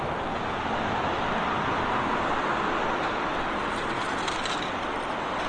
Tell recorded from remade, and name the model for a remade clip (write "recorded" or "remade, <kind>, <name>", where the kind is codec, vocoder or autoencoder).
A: recorded